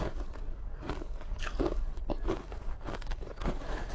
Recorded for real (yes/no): no